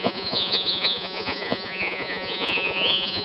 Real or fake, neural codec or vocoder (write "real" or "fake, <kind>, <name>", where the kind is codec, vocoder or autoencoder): fake, vocoder, Vocos